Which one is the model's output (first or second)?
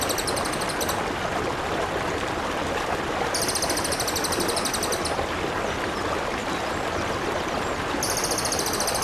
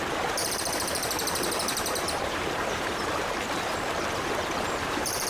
second